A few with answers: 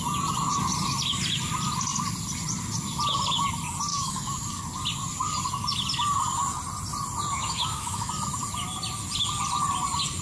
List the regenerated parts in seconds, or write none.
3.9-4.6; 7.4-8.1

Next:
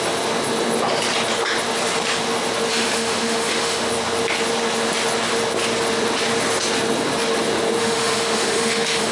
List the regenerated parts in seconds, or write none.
2.7-3.9; 7.8-9.1

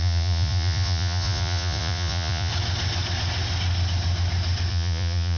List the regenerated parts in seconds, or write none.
0.0-2.5; 4.7-5.4

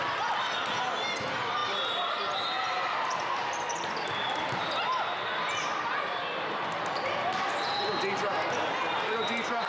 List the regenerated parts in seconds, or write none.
none